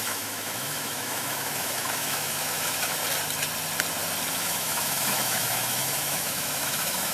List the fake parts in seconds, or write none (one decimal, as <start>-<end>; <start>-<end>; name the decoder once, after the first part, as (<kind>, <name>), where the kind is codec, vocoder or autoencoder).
0.0-3.0 (autoencoder, DAC-VAE); 4.3-7.1